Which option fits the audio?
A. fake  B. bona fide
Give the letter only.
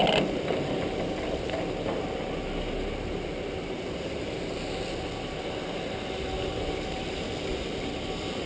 B